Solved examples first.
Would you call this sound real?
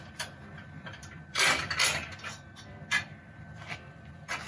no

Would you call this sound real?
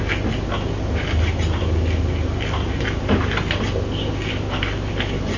yes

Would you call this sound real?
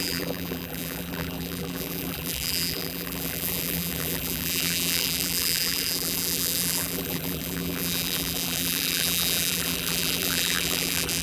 no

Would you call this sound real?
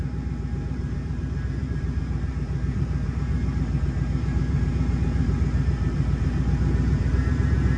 no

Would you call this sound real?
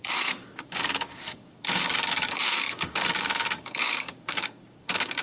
no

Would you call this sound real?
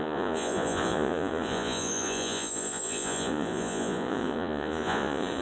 no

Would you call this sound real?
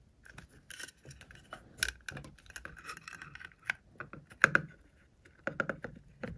yes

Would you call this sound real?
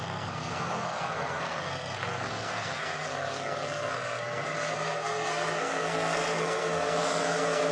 no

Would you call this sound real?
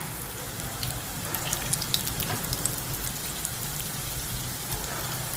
yes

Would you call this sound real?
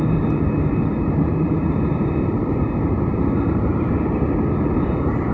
no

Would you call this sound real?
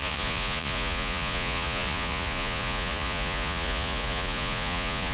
no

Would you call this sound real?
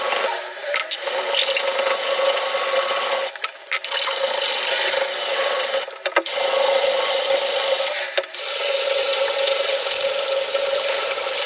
yes